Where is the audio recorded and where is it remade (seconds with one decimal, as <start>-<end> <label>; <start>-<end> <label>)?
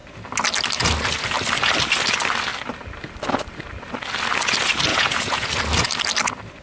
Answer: 0.0-4.9 recorded; 4.9-5.5 remade; 5.5-6.6 recorded